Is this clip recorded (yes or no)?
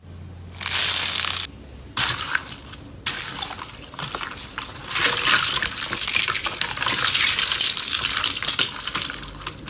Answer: yes